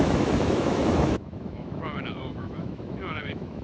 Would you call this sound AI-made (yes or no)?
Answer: yes